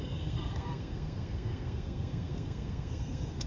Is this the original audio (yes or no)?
no